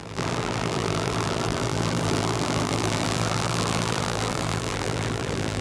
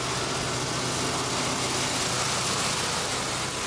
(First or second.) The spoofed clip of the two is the first